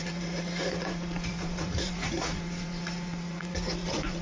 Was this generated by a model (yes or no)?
yes